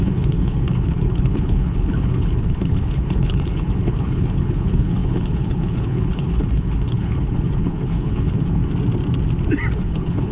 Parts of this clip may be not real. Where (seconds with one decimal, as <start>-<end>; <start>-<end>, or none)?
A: 0.0-8.6; 9.7-10.3